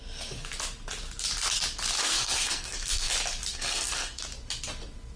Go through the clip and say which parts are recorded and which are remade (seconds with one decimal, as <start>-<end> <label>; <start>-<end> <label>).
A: 0.0-2.0 recorded; 2.0-3.1 remade; 3.1-3.5 recorded; 3.5-4.2 remade; 4.2-5.2 recorded